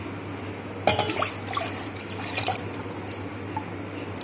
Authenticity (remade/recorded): recorded